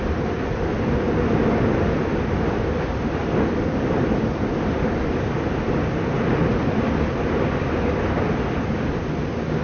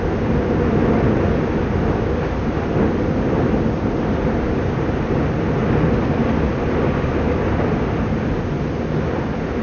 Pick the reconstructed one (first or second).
first